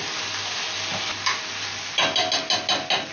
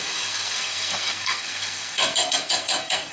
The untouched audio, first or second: first